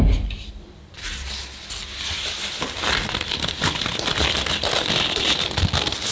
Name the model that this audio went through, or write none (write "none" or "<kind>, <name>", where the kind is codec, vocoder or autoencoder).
none